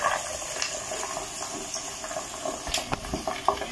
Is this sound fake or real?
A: real